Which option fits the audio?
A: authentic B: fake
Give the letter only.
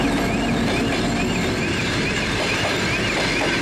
A